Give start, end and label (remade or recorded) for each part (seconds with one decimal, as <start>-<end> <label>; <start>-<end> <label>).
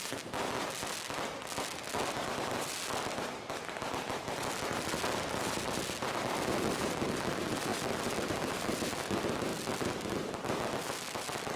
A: 0.0-11.6 recorded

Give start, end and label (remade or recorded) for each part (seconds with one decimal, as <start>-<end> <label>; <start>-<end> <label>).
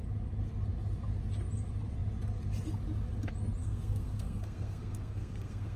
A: 0.0-3.6 recorded; 3.6-5.8 remade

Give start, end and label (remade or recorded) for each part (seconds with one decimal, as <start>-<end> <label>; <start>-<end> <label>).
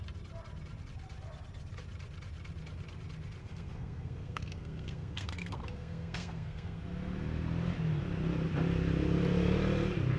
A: 0.0-3.4 recorded; 3.4-6.8 remade; 6.8-10.2 recorded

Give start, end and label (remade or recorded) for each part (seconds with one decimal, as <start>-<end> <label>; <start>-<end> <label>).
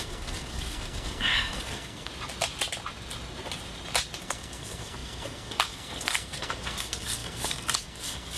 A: 0.0-2.1 remade; 2.1-4.2 recorded; 4.2-8.4 remade